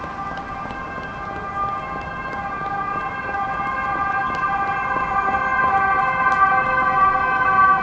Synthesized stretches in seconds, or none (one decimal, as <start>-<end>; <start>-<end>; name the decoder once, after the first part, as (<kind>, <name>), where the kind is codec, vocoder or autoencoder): none